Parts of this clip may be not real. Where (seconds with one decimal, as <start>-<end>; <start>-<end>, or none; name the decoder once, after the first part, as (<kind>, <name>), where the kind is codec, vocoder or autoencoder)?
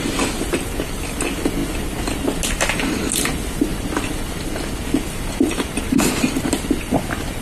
none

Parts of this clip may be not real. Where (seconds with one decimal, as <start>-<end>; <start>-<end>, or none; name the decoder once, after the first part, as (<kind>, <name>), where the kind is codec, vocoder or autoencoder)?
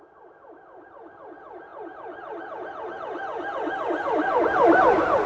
none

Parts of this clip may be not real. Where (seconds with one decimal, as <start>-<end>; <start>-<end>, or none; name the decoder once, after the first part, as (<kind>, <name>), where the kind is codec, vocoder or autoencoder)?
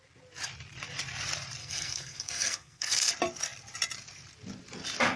1.6-3.1 (codec, SNAC)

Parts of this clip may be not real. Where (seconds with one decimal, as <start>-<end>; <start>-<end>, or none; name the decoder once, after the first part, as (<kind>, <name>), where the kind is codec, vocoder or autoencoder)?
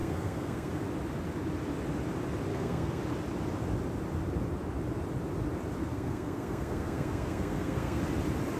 0.0-0.7 (codec, SNAC); 2.5-3.0; 5.8-8.0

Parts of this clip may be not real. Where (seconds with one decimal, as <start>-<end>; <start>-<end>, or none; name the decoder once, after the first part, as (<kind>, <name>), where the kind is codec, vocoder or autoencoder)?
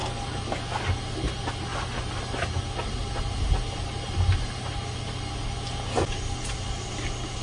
none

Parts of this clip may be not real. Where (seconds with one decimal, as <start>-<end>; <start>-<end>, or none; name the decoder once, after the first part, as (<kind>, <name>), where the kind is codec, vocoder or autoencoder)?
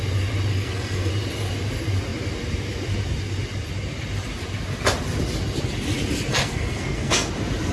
0.5-1.1 (codec, SNAC); 6.3-7.3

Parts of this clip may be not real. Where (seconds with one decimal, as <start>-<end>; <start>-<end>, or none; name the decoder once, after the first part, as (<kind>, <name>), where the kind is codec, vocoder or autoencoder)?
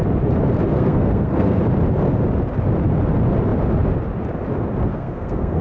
0.7-1.6 (codec, SNAC); 4.9-5.6